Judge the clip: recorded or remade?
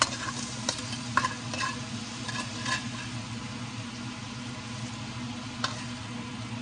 recorded